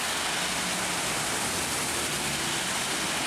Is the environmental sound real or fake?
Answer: real